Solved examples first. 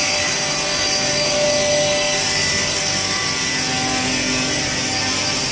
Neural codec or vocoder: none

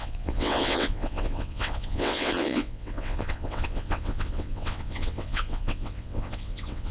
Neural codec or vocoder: vocoder, WaveNeXt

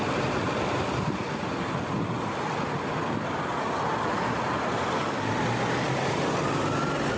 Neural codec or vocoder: none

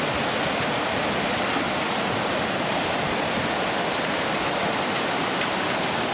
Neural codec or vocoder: none